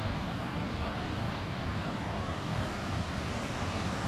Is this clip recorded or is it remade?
remade